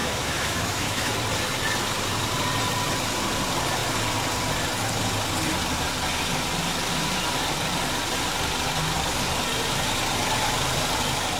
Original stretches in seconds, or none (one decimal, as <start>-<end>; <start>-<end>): 1.1-11.4